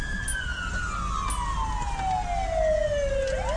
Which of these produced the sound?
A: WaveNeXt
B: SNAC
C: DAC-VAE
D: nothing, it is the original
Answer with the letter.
D